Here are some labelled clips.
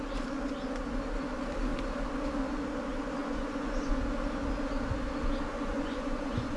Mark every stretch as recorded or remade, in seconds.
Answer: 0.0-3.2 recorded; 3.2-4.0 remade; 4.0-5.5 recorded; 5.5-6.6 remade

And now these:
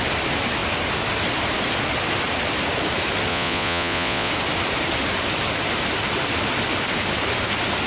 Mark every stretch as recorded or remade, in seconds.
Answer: 0.0-3.3 recorded; 3.3-4.3 remade; 4.3-7.9 recorded

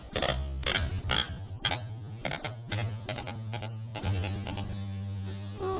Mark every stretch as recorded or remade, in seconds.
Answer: 0.0-5.8 recorded

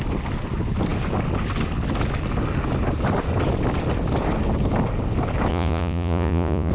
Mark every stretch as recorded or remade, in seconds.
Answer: 0.0-5.5 recorded; 5.5-6.7 remade

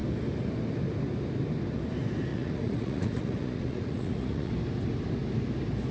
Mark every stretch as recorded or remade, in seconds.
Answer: 0.0-2.3 recorded; 2.3-4.5 remade; 4.5-5.9 recorded

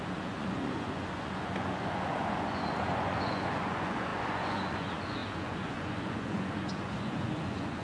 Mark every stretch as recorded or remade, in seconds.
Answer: 0.0-7.8 remade

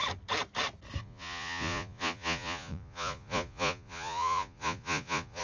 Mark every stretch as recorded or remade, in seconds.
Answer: 0.0-1.0 recorded; 1.0-5.4 remade